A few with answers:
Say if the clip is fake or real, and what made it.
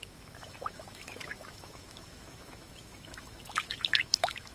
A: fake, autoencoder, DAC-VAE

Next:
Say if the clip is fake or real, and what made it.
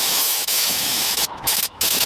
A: fake, autoencoder, DAC-VAE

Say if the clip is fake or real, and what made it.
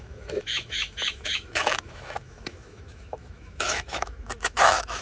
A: fake, autoencoder, DAC-VAE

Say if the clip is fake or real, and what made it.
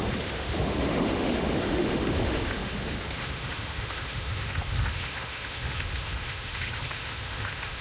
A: fake, autoencoder, DAC-VAE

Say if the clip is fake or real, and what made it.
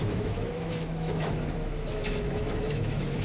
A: fake, autoencoder, DAC-VAE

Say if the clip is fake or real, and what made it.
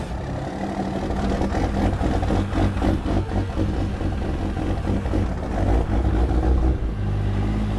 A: real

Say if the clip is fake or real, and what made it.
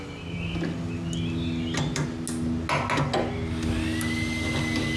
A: real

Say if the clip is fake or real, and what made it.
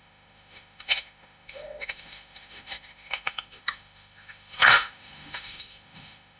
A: fake, autoencoder, DAC-VAE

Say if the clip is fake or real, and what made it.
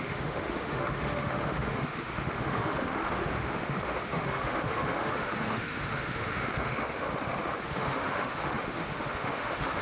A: fake, autoencoder, DAC-VAE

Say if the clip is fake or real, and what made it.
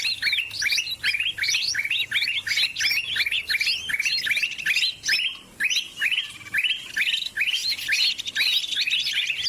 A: real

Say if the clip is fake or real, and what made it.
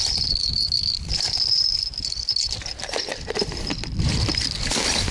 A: real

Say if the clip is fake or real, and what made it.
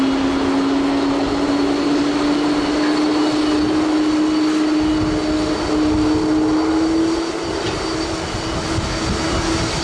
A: real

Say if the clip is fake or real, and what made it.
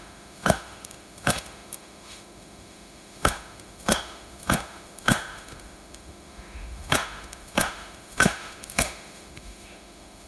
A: fake, autoencoder, DAC-VAE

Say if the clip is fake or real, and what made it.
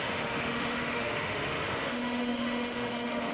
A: fake, autoencoder, DAC-VAE